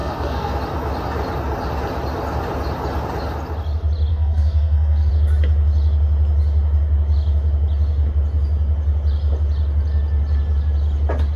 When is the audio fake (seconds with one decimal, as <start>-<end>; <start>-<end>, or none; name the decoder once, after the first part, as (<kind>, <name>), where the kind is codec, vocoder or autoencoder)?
0.0-0.6 (codec, SNAC); 4.1-5.1